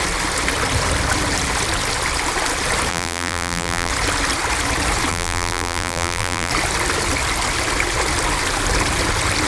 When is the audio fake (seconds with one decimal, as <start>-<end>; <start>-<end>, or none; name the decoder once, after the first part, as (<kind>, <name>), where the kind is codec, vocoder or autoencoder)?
2.9-3.9 (vocoder, BigVGAN v2); 5.1-6.5